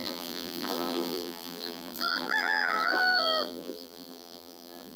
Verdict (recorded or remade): remade